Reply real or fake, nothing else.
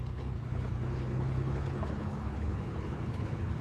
fake